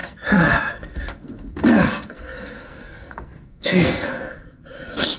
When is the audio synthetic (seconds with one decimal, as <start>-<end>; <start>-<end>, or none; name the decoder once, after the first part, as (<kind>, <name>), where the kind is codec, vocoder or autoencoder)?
0.0-5.2 (codec, SNAC)